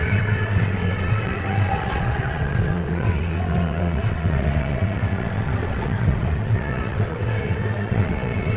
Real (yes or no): no